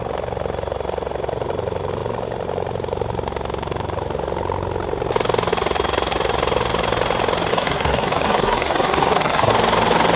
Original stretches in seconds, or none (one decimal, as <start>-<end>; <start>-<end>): 0.0-7.5; 9.5-10.2